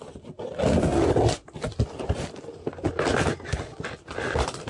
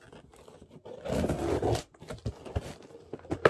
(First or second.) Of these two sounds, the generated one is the first